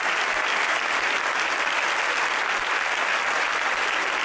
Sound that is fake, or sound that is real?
real